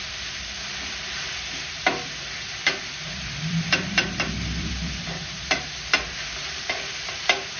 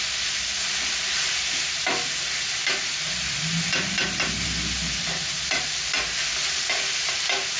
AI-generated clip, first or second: first